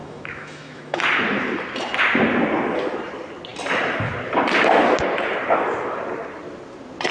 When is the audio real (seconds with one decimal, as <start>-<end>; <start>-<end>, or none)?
1.0-7.1